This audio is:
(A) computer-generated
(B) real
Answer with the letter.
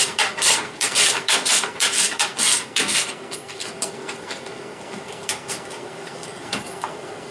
A